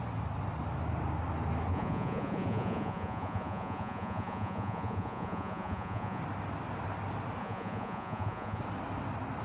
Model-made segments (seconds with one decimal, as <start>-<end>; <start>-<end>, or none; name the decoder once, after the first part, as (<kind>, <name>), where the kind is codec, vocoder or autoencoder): 1.7-6.2 (vocoder, Vocos); 7.4-8.6